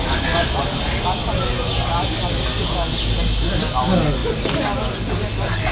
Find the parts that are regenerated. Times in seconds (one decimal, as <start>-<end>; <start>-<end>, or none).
none